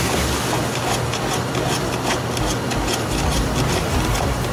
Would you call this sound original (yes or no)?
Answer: yes